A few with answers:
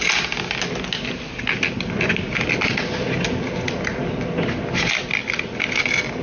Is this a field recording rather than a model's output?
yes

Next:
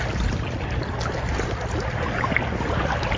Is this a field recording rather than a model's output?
yes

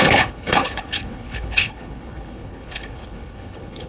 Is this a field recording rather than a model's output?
no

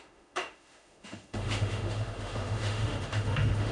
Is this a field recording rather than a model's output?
no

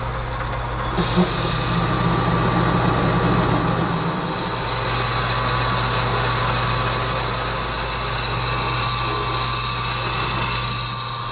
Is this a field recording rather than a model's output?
yes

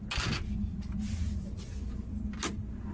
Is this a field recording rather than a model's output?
yes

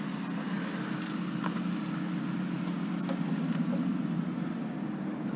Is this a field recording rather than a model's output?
yes